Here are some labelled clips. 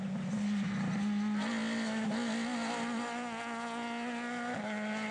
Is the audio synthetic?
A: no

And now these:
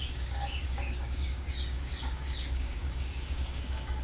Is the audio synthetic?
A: yes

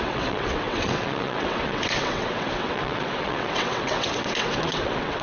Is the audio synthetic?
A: yes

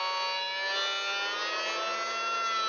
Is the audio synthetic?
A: no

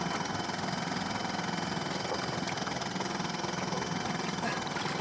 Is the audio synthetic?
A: no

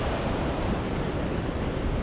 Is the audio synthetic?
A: yes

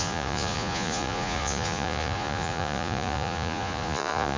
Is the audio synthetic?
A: yes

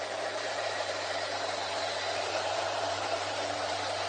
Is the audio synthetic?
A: yes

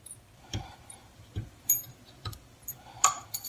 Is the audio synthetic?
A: yes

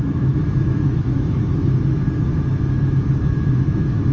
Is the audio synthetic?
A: yes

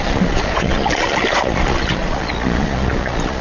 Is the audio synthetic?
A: yes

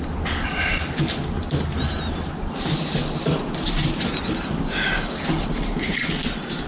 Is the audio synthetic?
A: no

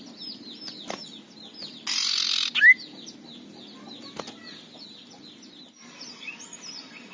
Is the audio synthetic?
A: no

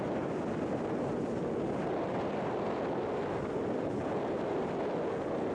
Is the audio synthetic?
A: no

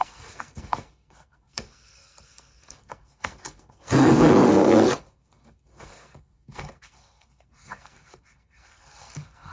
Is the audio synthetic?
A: yes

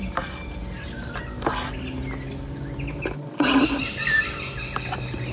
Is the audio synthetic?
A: no